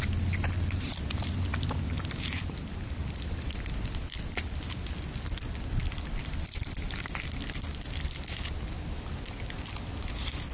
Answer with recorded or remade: recorded